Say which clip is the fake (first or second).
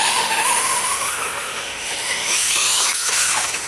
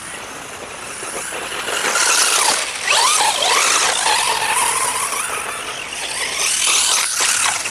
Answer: first